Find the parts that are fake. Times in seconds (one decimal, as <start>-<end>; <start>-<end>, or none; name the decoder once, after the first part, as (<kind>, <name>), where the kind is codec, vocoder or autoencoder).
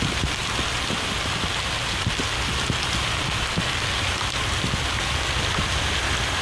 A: none